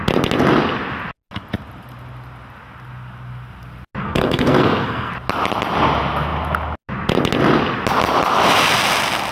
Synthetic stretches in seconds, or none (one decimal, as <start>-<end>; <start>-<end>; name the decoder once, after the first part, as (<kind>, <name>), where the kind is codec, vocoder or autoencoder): 4.0-5.1 (codec, SNAC)